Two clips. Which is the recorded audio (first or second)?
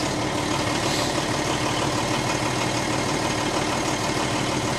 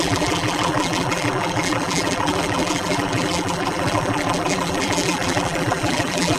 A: first